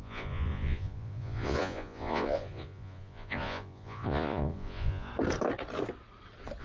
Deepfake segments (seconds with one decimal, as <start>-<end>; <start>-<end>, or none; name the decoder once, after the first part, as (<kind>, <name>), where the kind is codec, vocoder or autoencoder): 0.0-5.1 (vocoder, Vocos)